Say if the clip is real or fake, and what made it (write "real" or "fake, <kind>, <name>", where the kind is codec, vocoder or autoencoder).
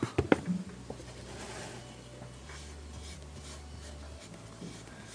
real